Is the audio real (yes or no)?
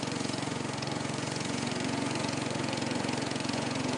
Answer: no